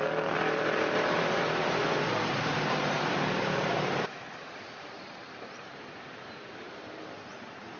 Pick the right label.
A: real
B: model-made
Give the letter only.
B